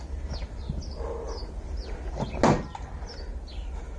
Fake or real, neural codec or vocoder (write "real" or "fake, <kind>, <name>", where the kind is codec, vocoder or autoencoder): real